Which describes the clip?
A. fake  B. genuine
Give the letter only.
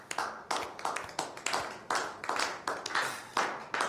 B